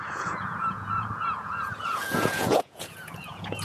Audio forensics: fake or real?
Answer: fake